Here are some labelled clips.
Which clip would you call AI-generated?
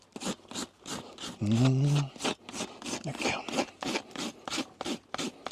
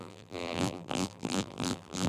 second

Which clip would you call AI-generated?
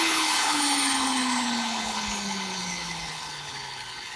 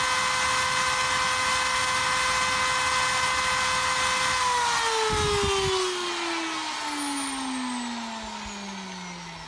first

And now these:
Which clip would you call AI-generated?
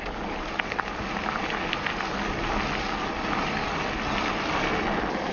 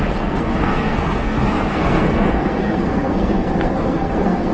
second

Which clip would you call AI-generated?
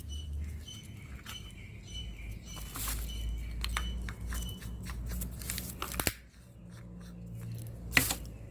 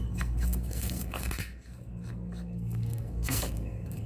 second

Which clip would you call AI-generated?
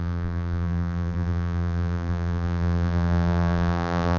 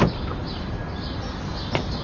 first